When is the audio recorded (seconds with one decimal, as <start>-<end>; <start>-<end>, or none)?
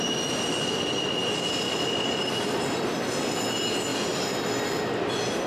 0.0-5.5